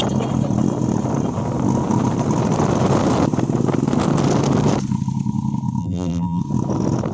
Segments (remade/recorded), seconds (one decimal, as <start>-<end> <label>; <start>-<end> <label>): 0.0-5.8 recorded; 5.8-6.4 remade; 6.4-7.1 recorded